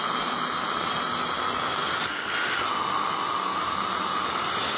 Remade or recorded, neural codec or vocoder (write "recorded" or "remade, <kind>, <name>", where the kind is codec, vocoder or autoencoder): recorded